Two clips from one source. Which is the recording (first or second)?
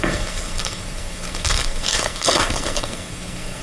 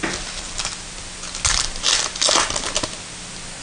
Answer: second